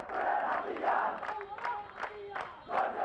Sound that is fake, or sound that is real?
real